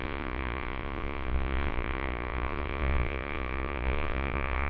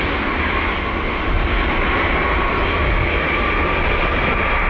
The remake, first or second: first